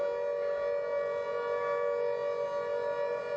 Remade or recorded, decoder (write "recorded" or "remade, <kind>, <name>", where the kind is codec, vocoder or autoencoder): recorded